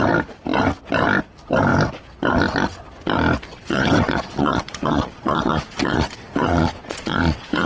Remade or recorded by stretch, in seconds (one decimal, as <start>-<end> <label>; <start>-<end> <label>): 0.0-3.5 recorded; 3.5-7.7 remade